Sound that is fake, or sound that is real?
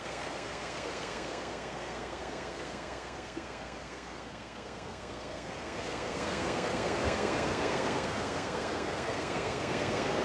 fake